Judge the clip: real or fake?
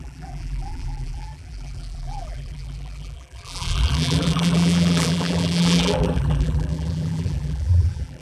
fake